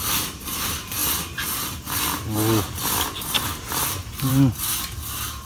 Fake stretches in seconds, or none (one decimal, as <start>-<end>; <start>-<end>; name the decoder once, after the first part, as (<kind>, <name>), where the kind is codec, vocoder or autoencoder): none